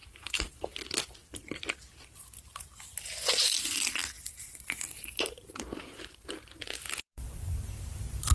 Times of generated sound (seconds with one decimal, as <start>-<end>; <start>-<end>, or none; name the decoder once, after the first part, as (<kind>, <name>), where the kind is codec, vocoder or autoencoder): 0.0-0.7 (vocoder, BigVGAN v2); 4.0-7.5